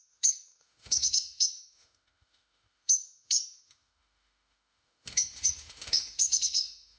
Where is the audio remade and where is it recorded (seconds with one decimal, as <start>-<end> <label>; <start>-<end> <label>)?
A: 0.0-7.0 remade